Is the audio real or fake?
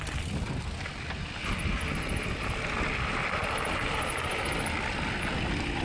real